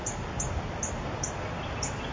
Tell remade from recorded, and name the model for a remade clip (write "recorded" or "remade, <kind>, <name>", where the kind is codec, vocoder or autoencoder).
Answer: recorded